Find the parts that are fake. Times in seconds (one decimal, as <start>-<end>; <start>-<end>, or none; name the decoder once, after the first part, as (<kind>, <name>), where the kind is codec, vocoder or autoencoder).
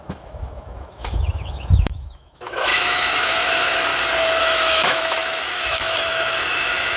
0.0-3.9 (autoencoder, DAC-VAE); 4.4-7.0